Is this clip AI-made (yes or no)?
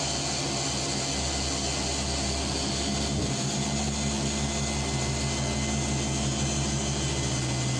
no